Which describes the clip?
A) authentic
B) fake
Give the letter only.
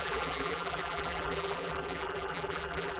B